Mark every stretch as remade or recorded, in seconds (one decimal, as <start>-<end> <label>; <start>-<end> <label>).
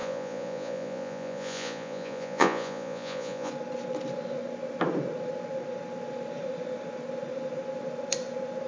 0.0-3.5 remade; 3.5-8.7 recorded